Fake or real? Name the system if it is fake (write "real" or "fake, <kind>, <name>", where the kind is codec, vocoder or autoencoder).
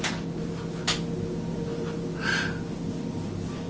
real